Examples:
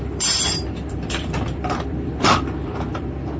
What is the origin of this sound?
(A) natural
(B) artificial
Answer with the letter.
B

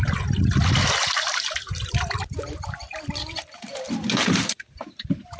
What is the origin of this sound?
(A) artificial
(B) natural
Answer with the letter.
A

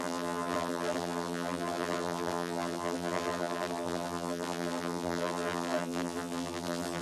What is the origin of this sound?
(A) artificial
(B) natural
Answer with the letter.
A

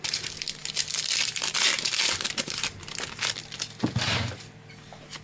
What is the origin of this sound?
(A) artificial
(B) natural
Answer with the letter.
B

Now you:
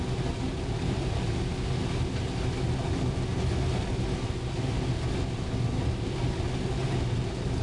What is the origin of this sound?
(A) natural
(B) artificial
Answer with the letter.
A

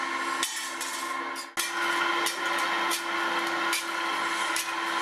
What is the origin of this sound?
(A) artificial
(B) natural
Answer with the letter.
B